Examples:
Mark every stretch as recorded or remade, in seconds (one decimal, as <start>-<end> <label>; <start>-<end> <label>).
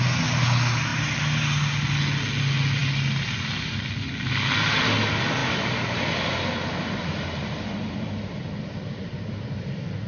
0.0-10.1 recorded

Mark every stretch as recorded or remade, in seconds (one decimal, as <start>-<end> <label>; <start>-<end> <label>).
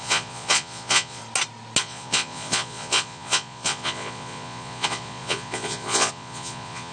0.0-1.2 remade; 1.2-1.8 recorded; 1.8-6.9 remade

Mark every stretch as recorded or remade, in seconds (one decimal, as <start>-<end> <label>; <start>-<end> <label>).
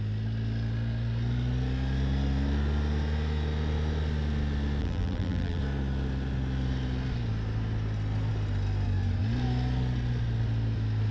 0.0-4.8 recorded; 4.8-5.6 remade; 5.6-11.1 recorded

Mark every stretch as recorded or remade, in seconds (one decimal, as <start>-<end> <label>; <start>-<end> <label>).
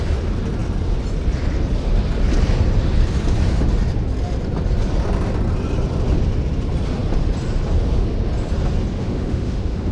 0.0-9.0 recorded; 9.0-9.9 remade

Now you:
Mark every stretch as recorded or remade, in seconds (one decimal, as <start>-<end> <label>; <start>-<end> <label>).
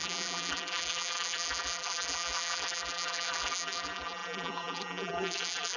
0.0-5.8 remade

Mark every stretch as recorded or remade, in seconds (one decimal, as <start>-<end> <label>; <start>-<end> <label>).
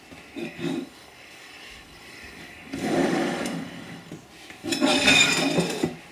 0.0-0.4 recorded; 0.4-4.1 remade; 4.1-4.6 recorded; 4.6-5.3 remade; 5.3-6.1 recorded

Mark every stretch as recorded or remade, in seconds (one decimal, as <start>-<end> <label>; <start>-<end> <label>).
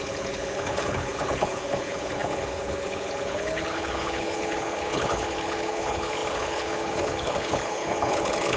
0.0-8.6 remade